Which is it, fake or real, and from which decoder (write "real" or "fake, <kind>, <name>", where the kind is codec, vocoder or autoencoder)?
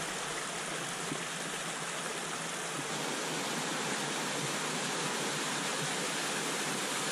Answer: real